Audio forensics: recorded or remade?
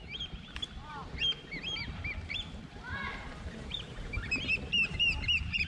remade